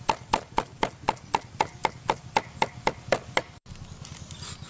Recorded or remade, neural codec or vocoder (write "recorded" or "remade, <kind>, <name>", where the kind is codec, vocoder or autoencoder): recorded